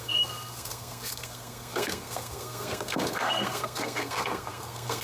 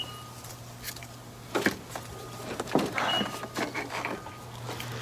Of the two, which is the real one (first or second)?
second